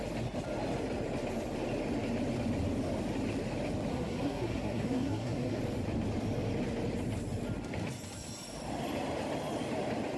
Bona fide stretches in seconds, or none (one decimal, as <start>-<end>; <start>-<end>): 0.0-3.9; 5.6-10.2